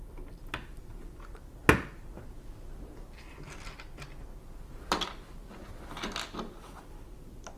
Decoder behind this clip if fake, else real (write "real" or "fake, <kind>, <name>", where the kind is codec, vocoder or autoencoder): real